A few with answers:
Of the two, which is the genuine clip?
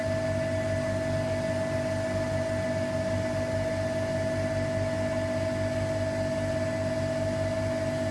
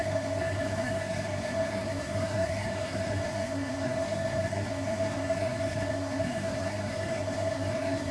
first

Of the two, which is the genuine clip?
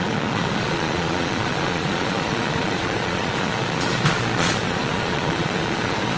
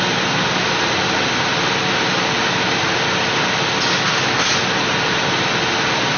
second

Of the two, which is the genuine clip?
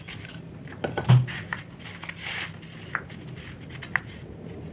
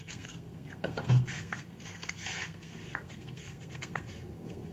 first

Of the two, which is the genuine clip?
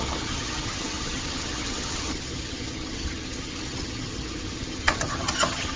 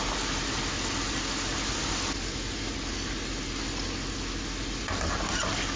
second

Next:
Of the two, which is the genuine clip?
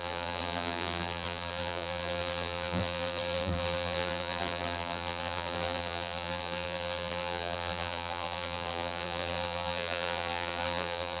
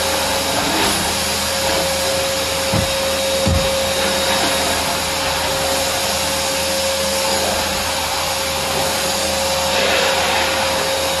second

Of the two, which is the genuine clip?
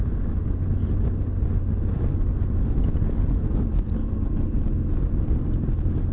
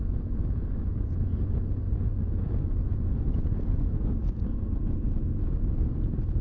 first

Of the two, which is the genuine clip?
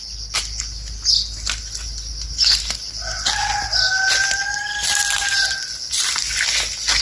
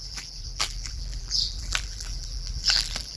first